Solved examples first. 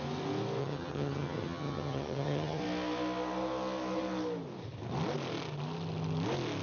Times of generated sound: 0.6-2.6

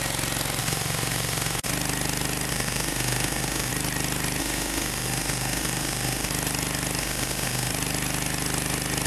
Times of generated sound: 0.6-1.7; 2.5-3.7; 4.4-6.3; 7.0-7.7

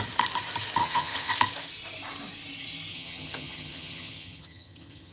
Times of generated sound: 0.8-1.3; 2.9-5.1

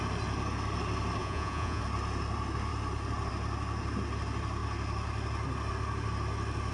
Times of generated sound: 1.2-1.8

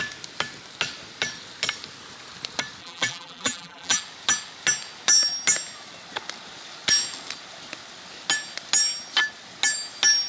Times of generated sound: 2.8-4.0